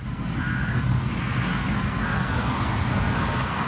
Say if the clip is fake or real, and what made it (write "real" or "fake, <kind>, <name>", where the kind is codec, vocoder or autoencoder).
fake, codec, SNAC